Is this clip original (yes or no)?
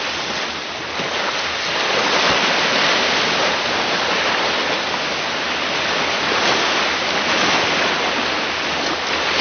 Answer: yes